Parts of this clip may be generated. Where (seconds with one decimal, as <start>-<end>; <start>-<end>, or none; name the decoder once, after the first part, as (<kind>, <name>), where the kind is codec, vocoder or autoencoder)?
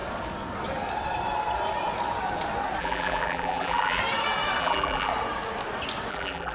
2.8-4.0 (vocoder, BigVGAN v2); 4.6-5.1; 6.1-6.5